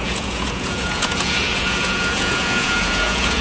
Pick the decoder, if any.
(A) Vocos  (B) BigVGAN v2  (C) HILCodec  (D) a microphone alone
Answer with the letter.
A